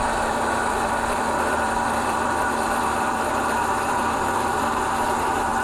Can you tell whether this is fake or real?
fake